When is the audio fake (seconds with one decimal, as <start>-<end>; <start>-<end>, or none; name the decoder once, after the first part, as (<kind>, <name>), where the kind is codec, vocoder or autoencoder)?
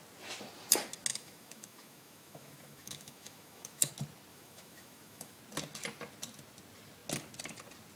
1.1-3.9 (autoencoder, DAC-VAE); 4.3-5.4